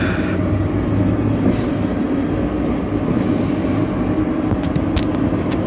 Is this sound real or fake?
real